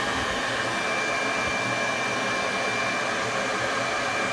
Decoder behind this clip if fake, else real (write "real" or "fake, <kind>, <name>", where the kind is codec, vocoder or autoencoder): real